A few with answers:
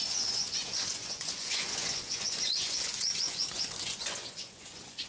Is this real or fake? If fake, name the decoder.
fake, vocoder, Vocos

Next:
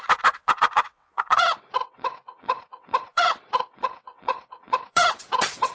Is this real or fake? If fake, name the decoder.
fake, vocoder, WaveNeXt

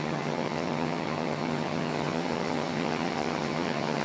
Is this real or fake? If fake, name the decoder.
fake, vocoder, HiFi-GAN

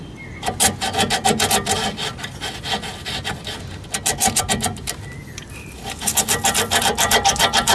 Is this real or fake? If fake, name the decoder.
real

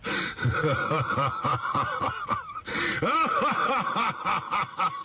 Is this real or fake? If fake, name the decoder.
fake, vocoder, BigVGAN v2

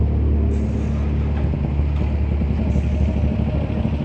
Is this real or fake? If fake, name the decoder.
real